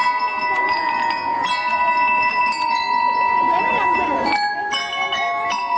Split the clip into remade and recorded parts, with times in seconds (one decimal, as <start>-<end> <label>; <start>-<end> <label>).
0.0-5.8 recorded